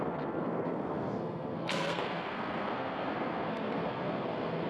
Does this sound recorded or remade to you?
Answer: remade